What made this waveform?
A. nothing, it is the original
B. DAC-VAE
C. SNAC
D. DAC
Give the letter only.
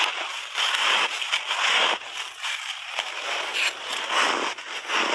A